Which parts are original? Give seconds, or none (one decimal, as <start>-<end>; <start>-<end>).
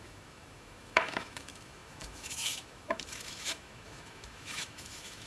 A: none